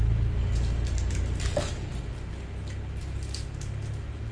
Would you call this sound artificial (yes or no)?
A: no